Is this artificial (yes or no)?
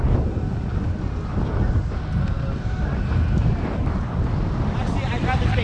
no